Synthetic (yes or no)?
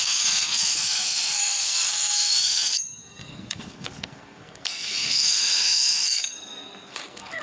yes